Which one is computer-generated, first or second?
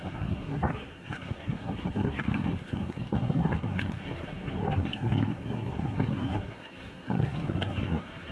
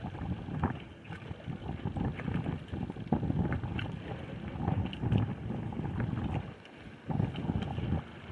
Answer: first